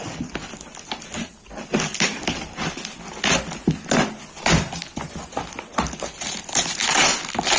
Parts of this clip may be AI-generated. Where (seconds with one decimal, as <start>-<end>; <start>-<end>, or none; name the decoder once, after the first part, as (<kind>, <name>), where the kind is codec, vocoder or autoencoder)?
none